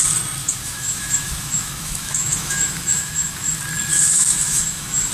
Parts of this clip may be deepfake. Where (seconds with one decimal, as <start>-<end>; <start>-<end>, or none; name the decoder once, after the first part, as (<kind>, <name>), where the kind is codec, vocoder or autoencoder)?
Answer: 0.4-3.5 (autoencoder, DAC-VAE); 3.9-5.1